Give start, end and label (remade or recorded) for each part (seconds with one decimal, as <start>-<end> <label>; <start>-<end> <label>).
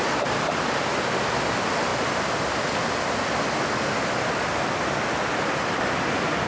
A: 0.0-6.5 recorded